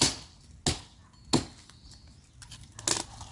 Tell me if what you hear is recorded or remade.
recorded